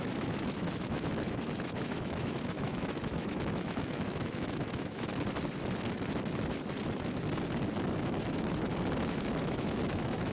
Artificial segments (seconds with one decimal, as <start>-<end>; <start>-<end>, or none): 0.0-5.1; 8.0-8.7; 9.4-10.3